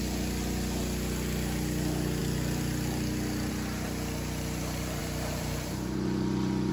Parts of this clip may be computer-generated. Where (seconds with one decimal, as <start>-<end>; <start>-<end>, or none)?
5.0-6.7